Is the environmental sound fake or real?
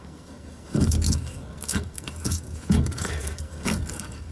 fake